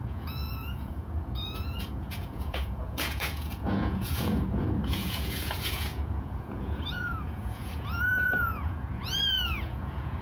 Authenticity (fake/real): fake